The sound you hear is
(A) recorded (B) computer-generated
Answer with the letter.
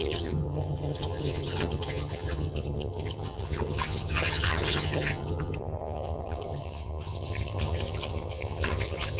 B